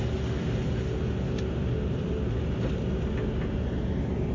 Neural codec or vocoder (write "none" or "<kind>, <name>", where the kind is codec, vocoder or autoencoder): none